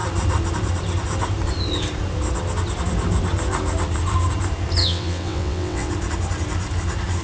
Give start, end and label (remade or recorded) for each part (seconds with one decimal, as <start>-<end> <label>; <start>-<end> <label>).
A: 0.0-4.8 recorded; 4.8-5.9 remade; 5.9-7.2 recorded